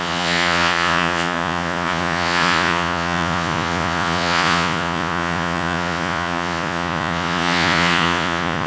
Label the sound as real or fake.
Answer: fake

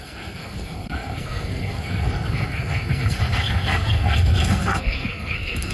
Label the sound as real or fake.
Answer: fake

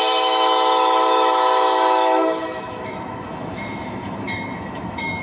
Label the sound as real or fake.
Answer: fake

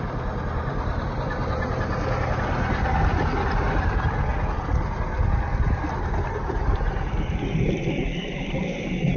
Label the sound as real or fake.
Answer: real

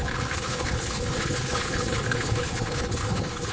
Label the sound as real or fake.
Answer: fake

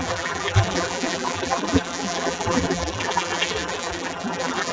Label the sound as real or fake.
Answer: fake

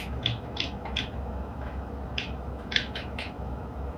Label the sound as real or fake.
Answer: fake